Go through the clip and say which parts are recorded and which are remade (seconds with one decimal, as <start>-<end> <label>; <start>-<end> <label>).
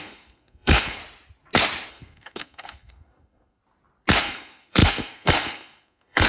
0.0-1.0 remade; 1.0-1.9 recorded; 1.9-3.6 remade; 3.6-4.2 recorded; 4.2-6.3 remade